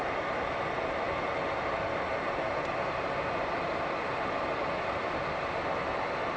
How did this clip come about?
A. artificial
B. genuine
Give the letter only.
B